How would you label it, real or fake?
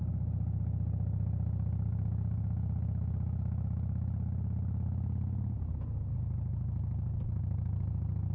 real